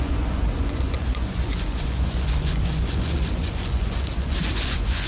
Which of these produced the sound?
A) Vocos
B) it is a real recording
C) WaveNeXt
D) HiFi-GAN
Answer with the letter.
A